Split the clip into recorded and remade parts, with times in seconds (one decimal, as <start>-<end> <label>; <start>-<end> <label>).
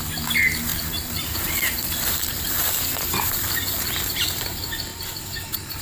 0.0-0.7 recorded; 0.7-4.2 remade; 4.2-5.8 recorded